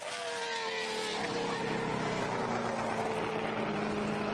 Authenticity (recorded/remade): recorded